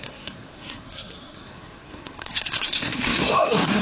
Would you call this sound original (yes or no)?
no